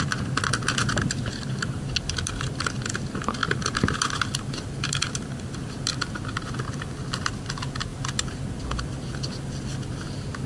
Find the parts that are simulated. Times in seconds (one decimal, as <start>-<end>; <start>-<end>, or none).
none